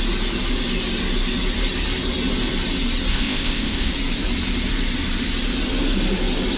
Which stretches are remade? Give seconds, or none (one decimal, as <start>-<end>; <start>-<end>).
3.1-3.9